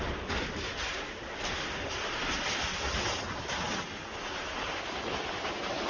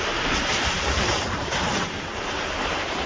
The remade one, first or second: second